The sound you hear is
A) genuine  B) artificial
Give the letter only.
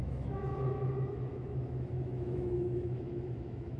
B